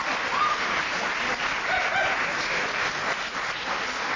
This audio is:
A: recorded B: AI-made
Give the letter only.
A